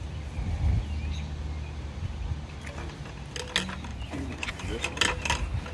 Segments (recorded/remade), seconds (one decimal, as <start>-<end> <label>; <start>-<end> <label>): 0.0-3.9 recorded; 3.9-4.5 remade; 4.5-5.7 recorded

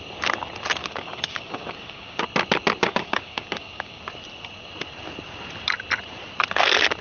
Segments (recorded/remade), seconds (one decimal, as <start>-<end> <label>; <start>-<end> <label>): 0.0-0.8 recorded; 0.8-2.2 remade; 2.2-2.8 recorded; 2.8-4.0 remade; 4.0-7.0 recorded

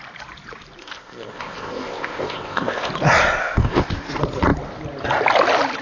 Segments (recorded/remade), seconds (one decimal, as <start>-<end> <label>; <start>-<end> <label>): 0.0-0.8 recorded; 0.8-2.9 remade; 2.9-3.4 recorded; 3.4-3.9 remade; 3.9-5.8 recorded